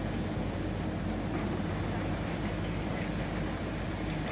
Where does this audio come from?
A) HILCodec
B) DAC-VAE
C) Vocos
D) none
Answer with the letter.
D